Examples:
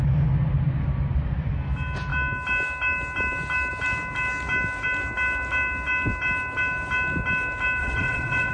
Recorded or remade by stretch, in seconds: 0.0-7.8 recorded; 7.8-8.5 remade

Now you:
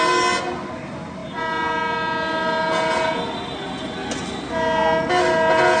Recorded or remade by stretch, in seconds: 0.0-5.8 recorded

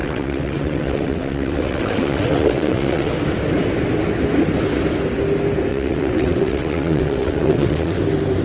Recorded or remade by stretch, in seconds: 0.0-3.1 remade; 3.1-5.7 recorded; 5.7-8.0 remade; 8.0-8.4 recorded

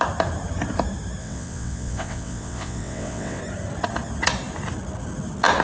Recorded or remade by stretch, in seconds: 0.0-1.2 recorded; 1.2-3.4 remade; 3.4-5.6 recorded

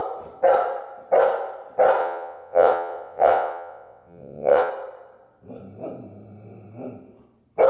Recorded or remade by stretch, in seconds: 0.0-2.0 recorded; 2.0-4.7 remade; 4.7-7.7 recorded

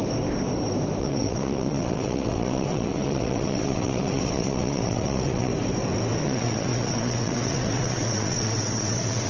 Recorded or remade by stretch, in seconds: 0.0-1.0 recorded; 1.0-5.5 remade; 5.5-6.2 recorded; 6.2-9.3 remade

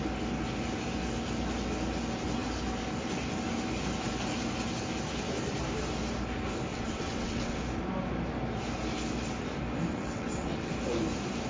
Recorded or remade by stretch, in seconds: 0.0-6.7 recorded; 6.7-7.6 remade; 7.6-9.9 recorded; 9.9-10.7 remade; 10.7-11.5 recorded